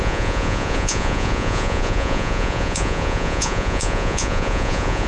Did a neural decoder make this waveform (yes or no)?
yes